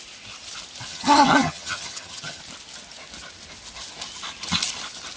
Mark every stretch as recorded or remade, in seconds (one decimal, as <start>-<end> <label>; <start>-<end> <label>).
0.0-0.9 recorded; 0.9-2.4 remade; 2.4-5.2 recorded